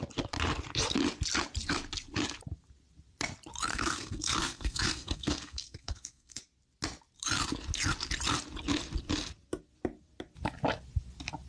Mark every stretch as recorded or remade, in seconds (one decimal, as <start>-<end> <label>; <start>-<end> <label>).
0.0-3.7 recorded; 3.7-6.4 remade; 6.4-11.5 recorded